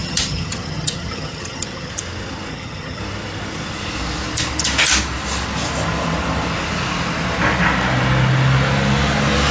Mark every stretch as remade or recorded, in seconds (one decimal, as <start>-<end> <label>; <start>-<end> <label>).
0.0-1.9 remade; 1.9-2.5 recorded; 2.5-3.0 remade; 3.0-9.5 recorded